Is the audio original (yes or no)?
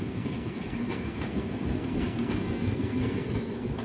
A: no